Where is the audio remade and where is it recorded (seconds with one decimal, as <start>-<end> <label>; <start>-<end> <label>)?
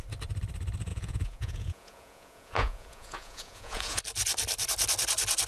0.0-0.9 recorded; 0.9-4.0 remade; 4.0-5.5 recorded